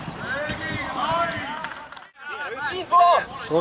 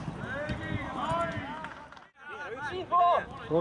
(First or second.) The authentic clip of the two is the second